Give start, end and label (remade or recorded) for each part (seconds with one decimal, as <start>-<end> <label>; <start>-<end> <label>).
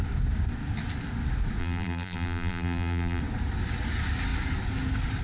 0.0-1.6 recorded; 1.6-3.2 remade; 3.2-5.2 recorded